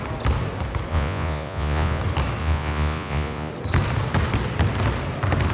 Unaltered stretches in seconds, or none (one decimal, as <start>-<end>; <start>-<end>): 0.0-0.9; 2.0-2.4; 3.5-5.5